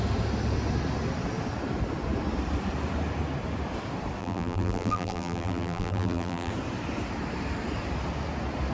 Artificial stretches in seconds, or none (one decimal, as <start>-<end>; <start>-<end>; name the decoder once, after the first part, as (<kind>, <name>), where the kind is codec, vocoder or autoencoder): 4.2-6.5 (vocoder, BigVGAN v2)